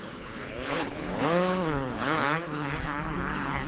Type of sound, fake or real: fake